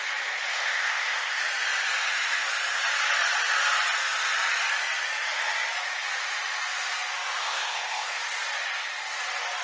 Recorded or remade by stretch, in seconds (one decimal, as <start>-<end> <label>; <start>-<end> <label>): 0.0-0.5 recorded; 0.5-1.4 remade; 1.4-7.4 recorded; 7.4-8.2 remade; 8.2-9.6 recorded